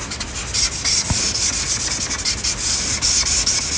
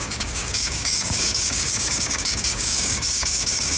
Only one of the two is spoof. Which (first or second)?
second